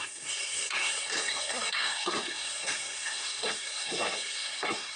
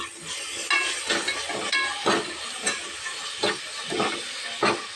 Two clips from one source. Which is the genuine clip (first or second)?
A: second